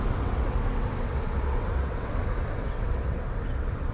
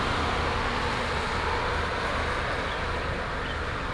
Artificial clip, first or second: first